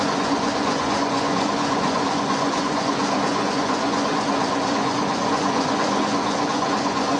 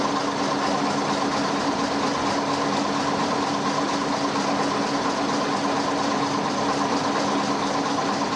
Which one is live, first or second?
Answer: second